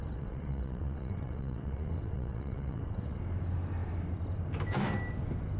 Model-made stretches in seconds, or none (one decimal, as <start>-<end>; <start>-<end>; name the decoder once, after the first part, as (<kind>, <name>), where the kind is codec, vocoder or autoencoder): 0.0-3.2 (vocoder, WaveNeXt)